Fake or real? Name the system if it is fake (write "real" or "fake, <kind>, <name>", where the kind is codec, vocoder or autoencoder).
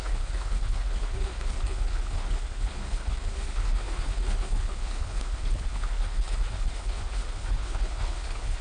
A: fake, codec, HILCodec